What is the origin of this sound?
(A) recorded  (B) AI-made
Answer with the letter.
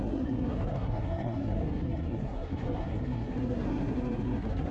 B